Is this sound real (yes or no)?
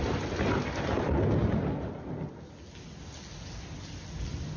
yes